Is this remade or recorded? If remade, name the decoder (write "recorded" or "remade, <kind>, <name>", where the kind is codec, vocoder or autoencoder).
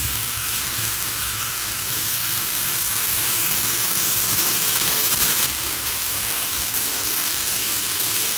remade, codec, DAC